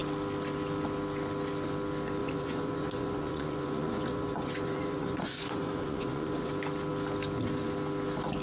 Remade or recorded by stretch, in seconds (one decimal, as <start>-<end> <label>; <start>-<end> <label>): 0.0-2.2 recorded; 2.2-6.5 remade; 6.5-8.4 recorded